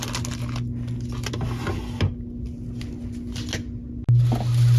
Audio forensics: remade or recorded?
recorded